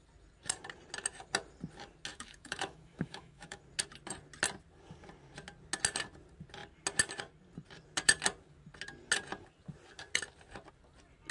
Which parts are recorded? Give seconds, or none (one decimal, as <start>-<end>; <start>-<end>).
0.0-2.1; 3.6-11.3